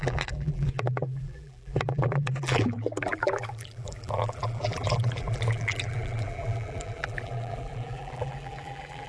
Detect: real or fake fake